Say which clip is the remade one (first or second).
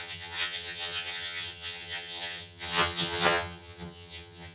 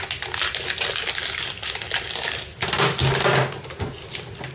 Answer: first